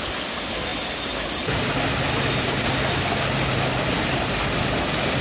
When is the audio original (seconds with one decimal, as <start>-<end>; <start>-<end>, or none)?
0.0-5.2